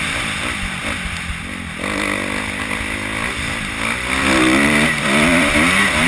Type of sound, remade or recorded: recorded